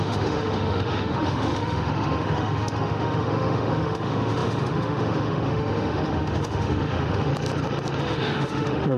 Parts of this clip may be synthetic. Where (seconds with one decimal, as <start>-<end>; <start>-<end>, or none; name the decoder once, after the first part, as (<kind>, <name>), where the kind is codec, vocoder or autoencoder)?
0.0-7.3 (autoencoder, DAC-VAE); 8.0-9.0